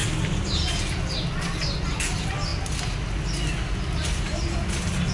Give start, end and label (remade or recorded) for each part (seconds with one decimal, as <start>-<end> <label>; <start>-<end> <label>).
0.0-5.1 recorded